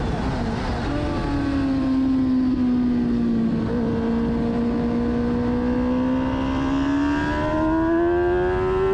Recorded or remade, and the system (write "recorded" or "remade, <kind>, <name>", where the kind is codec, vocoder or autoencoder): recorded